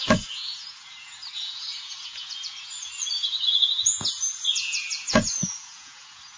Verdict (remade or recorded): remade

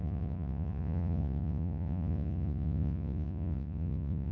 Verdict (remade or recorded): remade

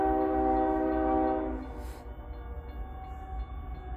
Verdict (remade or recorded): recorded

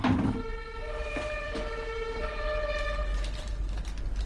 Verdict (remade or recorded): recorded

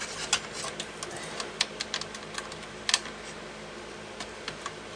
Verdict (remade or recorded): recorded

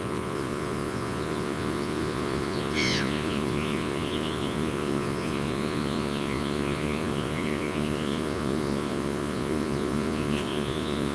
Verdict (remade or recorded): remade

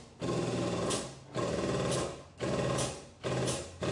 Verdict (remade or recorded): recorded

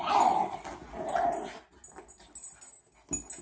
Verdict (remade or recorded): recorded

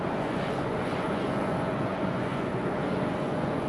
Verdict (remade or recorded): remade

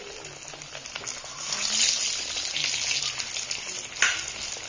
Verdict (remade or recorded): recorded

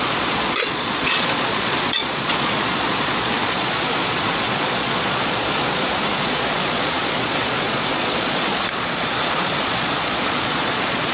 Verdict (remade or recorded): remade